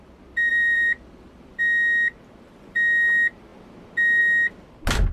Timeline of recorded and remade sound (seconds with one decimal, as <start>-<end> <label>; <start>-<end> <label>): 0.0-0.5 recorded; 0.5-1.6 remade; 1.6-5.1 recorded